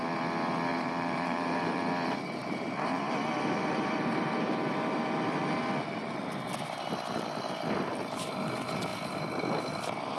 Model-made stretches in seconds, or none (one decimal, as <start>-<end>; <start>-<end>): 0.7-1.8; 2.4-5.6